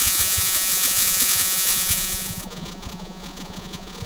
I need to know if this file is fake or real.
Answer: fake